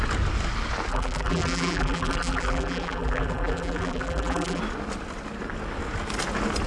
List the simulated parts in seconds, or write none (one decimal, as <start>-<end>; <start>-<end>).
0.9-4.6